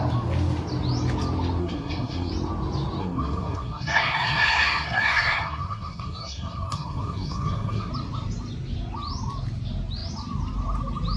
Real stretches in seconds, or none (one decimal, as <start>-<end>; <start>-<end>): 0.0-1.6; 2.3-3.0; 7.9-11.2